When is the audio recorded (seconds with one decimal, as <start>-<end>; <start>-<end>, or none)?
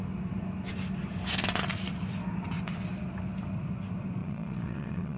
0.0-4.2